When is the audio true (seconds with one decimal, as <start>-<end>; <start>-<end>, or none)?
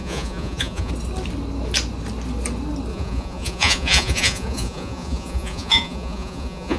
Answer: 0.9-2.9